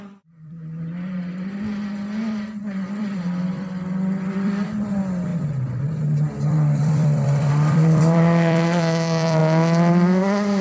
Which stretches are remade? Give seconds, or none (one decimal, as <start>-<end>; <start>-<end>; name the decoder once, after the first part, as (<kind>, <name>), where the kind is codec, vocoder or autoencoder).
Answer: 0.0-0.6 (vocoder, BigVGAN v2); 2.6-9.4; 9.9-10.6